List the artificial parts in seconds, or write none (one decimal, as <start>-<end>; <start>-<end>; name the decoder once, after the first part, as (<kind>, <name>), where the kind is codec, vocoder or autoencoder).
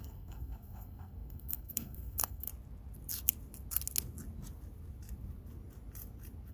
0.0-2.5 (codec, SNAC)